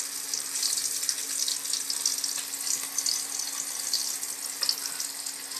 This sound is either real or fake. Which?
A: real